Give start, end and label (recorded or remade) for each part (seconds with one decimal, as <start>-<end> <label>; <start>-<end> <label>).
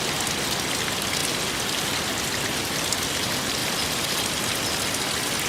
0.0-3.6 recorded; 3.6-4.4 remade; 4.4-5.5 recorded